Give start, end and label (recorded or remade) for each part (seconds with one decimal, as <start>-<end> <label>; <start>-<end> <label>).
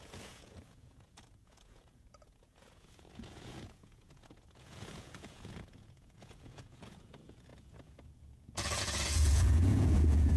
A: 0.0-10.4 remade